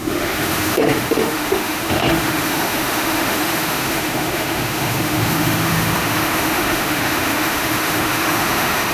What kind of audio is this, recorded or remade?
remade